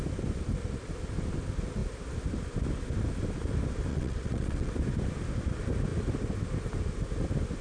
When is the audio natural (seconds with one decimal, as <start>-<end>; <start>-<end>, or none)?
0.0-3.9; 4.7-7.6